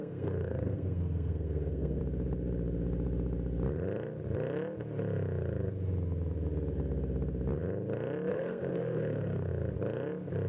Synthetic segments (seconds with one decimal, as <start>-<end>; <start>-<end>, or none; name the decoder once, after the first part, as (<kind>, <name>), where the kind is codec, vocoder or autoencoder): 0.0-2.0 (codec, SNAC); 8.3-9.5